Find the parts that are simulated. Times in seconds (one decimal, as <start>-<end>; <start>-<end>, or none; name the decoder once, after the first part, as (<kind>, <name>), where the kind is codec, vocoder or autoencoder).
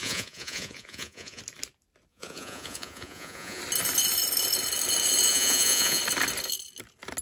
0.0-1.4 (vocoder, Vocos); 2.1-3.6; 5.3-6.0